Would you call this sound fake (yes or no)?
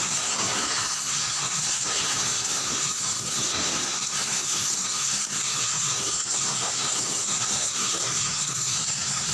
yes